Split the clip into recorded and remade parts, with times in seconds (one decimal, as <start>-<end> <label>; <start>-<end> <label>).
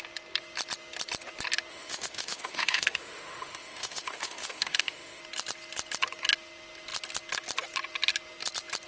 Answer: 0.0-1.7 recorded; 1.7-5.2 remade; 5.2-8.9 recorded